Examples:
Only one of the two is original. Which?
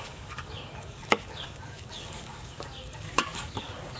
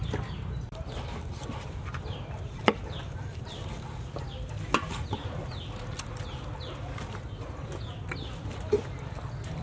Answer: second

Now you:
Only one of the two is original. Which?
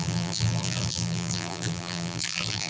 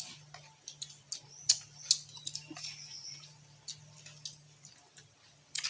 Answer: second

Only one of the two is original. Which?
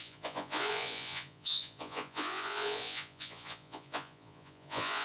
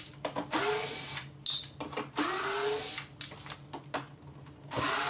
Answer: second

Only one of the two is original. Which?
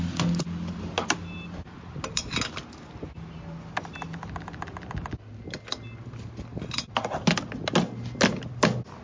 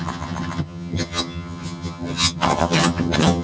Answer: first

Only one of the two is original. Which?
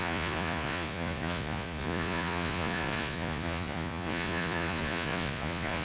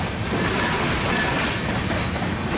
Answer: second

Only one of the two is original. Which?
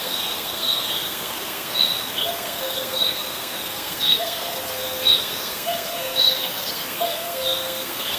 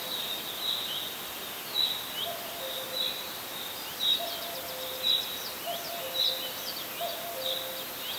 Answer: second